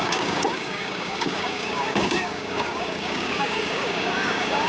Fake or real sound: fake